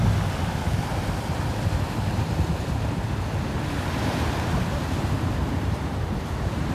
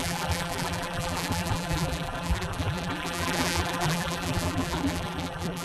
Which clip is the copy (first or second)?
second